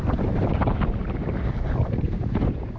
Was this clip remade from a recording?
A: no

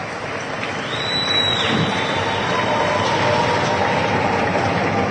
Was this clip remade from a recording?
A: no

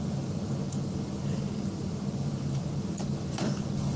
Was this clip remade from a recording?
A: no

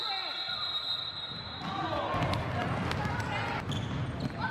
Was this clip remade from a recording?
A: no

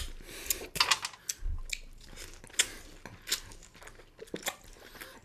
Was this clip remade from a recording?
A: no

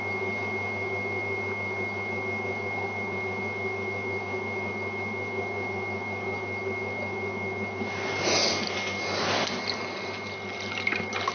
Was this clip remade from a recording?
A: no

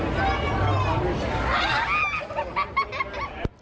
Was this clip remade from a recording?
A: no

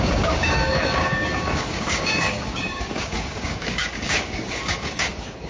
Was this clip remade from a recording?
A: yes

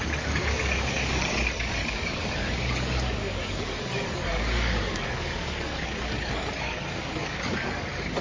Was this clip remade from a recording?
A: yes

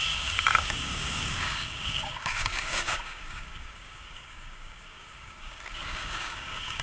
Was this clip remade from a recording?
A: yes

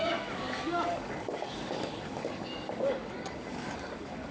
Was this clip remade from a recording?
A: yes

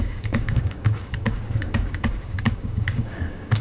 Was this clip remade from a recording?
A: yes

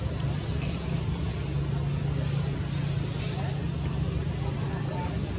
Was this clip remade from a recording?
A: no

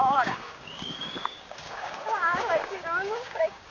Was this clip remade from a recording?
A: yes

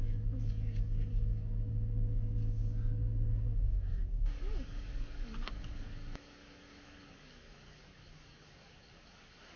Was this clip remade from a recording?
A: yes